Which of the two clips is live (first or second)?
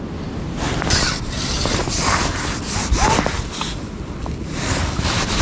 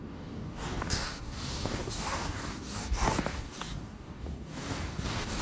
first